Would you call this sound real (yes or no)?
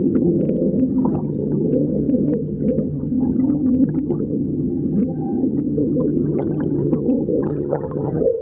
no